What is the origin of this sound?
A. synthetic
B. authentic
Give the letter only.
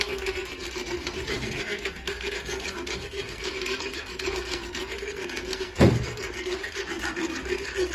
A